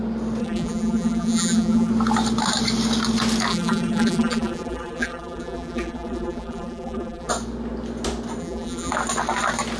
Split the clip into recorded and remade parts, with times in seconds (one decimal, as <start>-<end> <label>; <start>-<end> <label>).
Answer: 0.0-0.4 recorded; 0.4-1.9 remade; 1.9-3.5 recorded; 3.5-7.3 remade; 7.3-8.4 recorded; 8.4-8.9 remade; 8.9-9.8 recorded